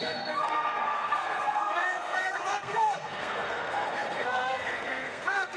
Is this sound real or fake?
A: fake